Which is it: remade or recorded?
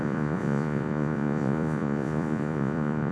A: remade